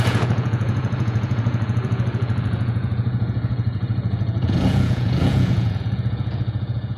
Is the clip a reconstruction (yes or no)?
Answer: yes